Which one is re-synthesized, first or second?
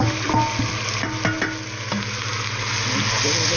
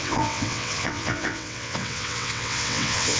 second